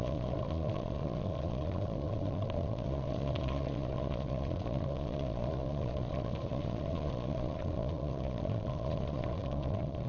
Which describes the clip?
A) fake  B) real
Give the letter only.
A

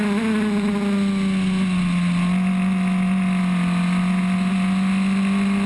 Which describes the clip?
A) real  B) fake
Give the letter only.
A